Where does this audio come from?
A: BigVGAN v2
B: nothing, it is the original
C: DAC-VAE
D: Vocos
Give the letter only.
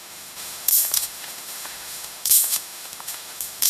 C